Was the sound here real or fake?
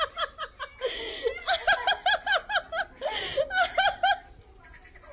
real